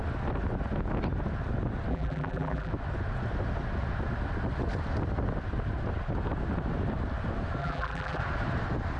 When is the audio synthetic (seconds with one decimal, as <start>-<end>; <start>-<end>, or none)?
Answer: 1.9-2.7; 7.6-8.2

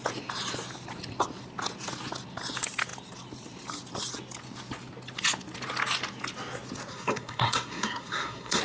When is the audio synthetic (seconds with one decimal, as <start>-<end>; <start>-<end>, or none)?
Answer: 6.9-8.6

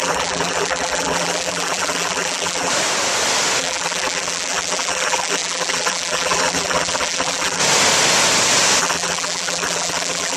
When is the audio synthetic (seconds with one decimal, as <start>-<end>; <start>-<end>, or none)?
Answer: 0.0-2.7; 3.6-7.6; 8.8-10.4